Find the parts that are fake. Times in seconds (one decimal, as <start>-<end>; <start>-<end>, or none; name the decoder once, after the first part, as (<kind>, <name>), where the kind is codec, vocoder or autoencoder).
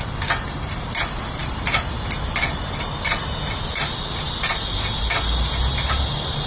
none